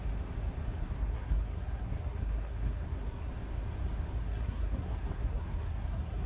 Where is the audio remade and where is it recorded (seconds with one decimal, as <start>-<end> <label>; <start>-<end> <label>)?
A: 0.0-0.8 recorded; 0.8-3.3 remade; 3.3-4.2 recorded; 4.2-6.3 remade